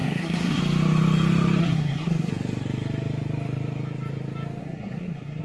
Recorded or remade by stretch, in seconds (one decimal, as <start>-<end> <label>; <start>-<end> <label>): 0.0-0.6 remade; 0.6-1.6 recorded; 1.6-2.3 remade; 2.3-4.6 recorded; 4.6-5.4 remade